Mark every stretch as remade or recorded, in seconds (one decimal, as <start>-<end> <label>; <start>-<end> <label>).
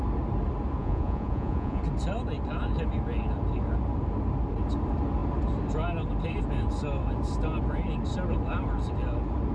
0.0-0.8 recorded; 0.8-1.8 remade; 1.8-9.5 recorded